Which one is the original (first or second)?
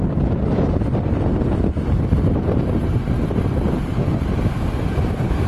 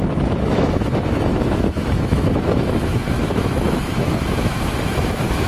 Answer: first